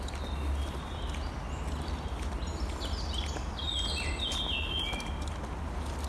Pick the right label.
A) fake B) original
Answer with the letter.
B